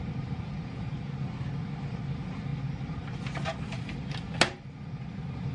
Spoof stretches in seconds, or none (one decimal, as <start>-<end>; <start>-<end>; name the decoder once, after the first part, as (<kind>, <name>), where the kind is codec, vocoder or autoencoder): none